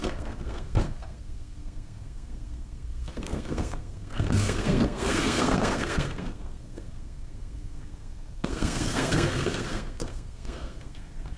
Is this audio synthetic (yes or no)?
yes